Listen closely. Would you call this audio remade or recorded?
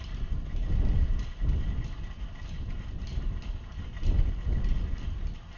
recorded